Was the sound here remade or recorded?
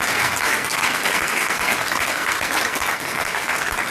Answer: remade